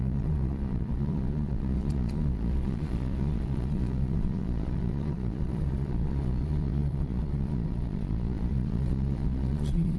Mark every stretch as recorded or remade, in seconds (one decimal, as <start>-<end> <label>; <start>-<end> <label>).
0.0-10.0 remade

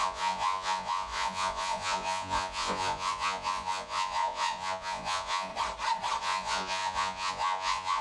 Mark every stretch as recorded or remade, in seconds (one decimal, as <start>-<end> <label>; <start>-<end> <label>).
0.0-5.5 remade; 5.5-6.2 recorded; 6.2-8.0 remade